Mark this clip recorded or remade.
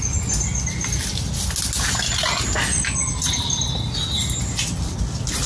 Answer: recorded